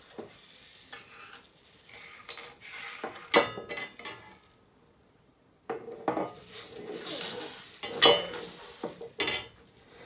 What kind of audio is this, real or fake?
real